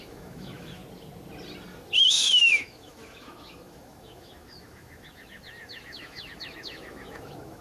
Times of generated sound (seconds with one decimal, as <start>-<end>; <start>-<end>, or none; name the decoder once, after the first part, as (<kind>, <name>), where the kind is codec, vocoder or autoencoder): 0.0-0.8 (autoencoder, DAC-VAE); 2.1-7.6